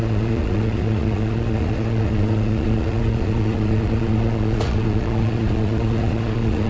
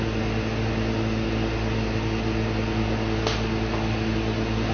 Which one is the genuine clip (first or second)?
second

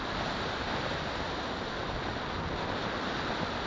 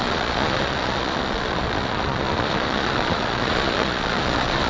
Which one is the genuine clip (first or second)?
first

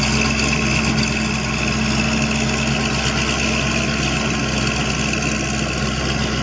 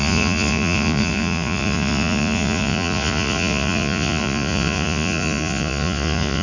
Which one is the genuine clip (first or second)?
first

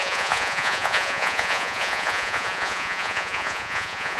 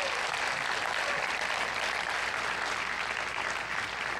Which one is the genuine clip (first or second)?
second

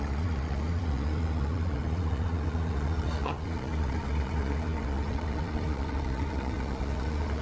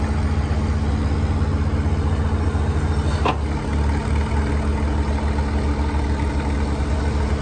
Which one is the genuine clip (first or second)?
second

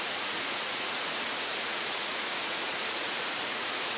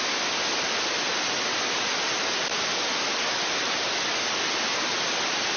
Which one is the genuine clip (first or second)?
second